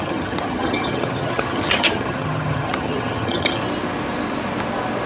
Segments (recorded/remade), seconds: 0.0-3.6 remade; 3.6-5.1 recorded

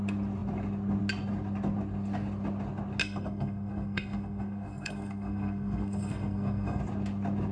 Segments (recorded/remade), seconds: 0.0-3.0 recorded; 3.0-6.8 remade; 6.8-7.5 recorded

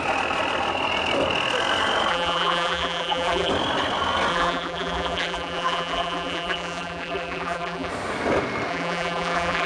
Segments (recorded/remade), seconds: 0.0-2.1 recorded; 2.1-3.5 remade; 3.5-4.3 recorded; 4.3-7.9 remade; 7.9-8.7 recorded; 8.7-9.7 remade

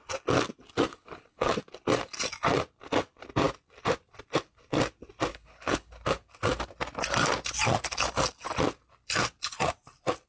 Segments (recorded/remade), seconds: 0.0-0.9 recorded; 0.9-1.5 remade; 1.5-5.3 recorded; 5.3-5.9 remade; 5.9-10.3 recorded

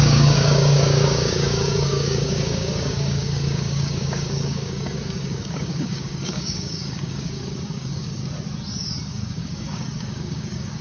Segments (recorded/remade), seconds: 0.0-8.2 remade; 8.2-9.0 recorded; 9.0-10.8 remade